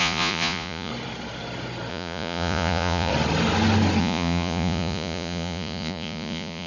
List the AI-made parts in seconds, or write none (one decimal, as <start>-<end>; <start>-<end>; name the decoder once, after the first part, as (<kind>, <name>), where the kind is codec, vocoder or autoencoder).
0.0-0.9 (vocoder, Vocos); 1.9-3.1; 4.0-6.7